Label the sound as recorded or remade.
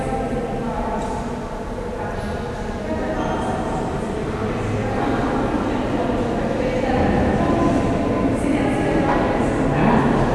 recorded